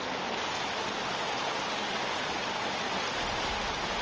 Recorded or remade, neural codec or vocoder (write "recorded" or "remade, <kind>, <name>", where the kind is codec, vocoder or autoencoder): recorded